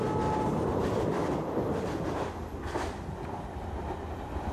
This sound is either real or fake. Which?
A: real